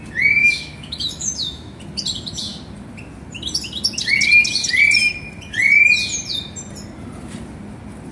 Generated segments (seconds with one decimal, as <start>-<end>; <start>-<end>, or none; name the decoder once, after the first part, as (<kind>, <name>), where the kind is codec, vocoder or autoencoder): 0.4-1.8 (autoencoder, DAC-VAE)